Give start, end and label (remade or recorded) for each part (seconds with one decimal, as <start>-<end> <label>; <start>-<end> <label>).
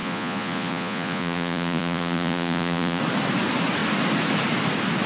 0.0-3.0 remade; 3.0-5.1 recorded